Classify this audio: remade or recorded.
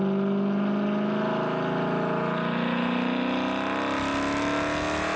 recorded